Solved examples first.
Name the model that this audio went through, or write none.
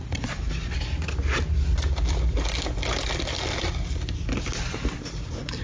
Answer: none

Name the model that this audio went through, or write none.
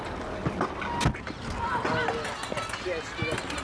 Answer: none